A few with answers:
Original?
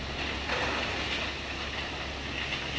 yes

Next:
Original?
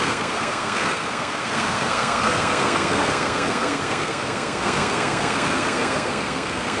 no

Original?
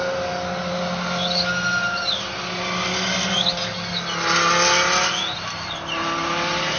yes